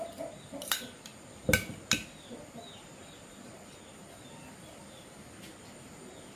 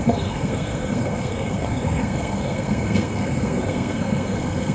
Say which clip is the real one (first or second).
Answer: first